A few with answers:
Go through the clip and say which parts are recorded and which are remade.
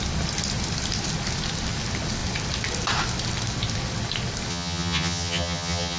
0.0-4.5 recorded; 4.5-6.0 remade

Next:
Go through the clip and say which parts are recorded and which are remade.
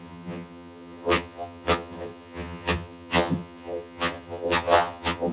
0.0-5.3 remade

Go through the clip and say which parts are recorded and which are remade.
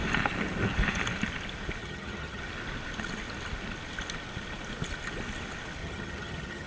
0.0-1.8 recorded; 1.8-2.4 remade; 2.4-5.8 recorded; 5.8-6.7 remade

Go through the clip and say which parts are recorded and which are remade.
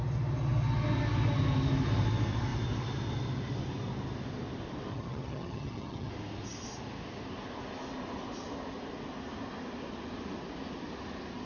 0.0-4.9 recorded; 4.9-6.1 remade; 6.1-11.5 recorded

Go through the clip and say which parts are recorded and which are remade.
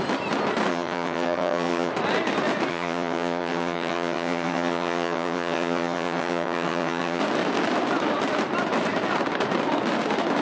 0.0-0.7 recorded; 0.7-1.9 remade; 1.9-2.7 recorded; 2.7-7.2 remade; 7.2-10.4 recorded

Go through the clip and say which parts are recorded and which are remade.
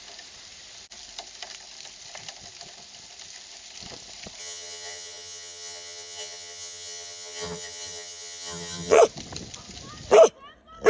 0.0-4.4 recorded; 4.4-9.0 remade; 9.0-10.9 recorded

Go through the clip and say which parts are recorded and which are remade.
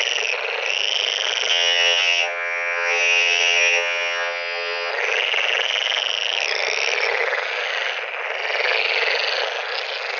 0.0-1.5 recorded; 1.5-4.9 remade; 4.9-10.2 recorded